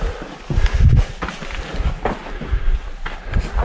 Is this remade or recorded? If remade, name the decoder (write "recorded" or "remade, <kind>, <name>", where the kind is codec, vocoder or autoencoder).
recorded